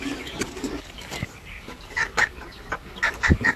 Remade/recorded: remade